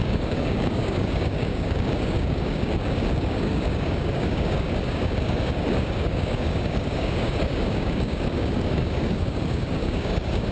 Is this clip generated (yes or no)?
yes